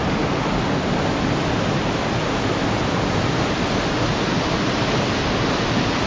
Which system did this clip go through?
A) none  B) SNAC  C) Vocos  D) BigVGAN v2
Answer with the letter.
A